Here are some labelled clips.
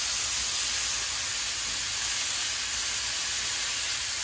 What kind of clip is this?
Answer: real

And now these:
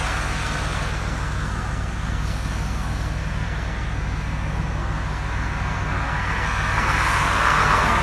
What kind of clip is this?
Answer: fake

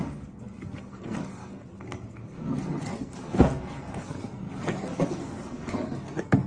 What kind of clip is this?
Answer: fake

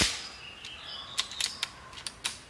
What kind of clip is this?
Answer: real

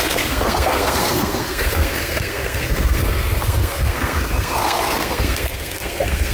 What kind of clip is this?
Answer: fake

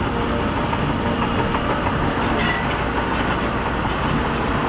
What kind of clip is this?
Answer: real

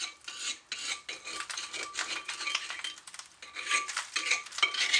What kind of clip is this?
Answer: real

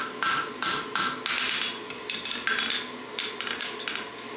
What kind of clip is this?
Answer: real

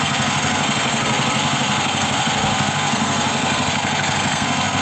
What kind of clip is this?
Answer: fake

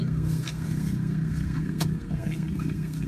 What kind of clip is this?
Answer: fake